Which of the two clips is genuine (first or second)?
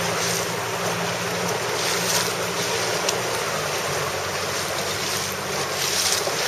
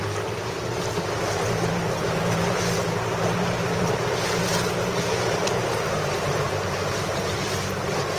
first